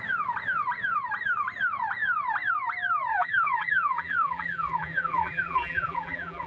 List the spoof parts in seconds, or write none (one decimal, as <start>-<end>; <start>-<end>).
3.1-6.5